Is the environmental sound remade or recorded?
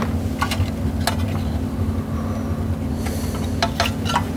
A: recorded